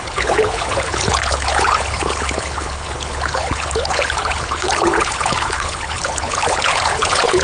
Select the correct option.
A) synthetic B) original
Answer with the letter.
A